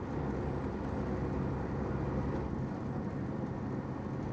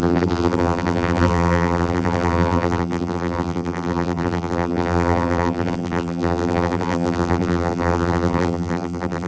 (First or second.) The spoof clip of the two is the second